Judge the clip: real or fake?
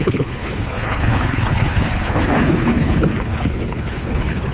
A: fake